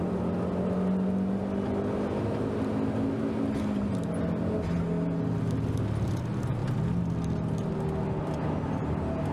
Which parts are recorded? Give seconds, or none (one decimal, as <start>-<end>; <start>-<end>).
0.0-9.3